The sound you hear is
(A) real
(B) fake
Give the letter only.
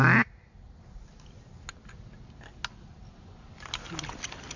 A